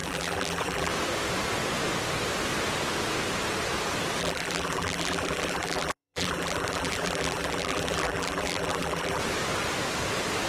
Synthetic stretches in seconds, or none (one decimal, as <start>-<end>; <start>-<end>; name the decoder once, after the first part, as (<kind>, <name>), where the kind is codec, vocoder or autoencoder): 0.0-0.9 (vocoder, BigVGAN v2); 4.2-9.2